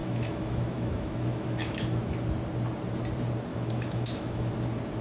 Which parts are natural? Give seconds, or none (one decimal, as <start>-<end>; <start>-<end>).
2.2-3.5; 4.5-5.0